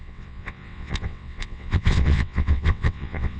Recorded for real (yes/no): no